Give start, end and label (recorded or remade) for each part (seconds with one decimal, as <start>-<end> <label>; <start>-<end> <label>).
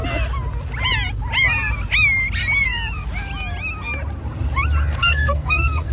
0.0-5.0 recorded; 5.0-5.9 remade